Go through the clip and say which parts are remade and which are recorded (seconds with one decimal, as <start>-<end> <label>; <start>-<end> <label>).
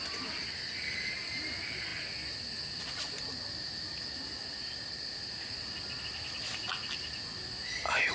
0.0-8.1 recorded